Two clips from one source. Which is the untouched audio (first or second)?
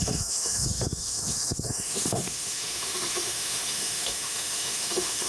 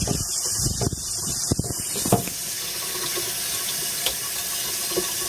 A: second